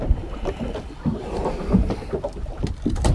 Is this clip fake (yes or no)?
yes